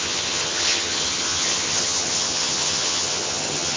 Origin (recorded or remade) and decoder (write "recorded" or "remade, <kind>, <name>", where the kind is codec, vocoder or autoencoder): remade, vocoder, HiFi-GAN